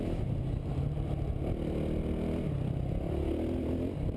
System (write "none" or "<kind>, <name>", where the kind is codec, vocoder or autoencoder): none